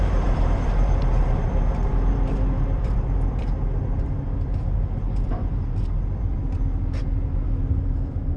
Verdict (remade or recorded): remade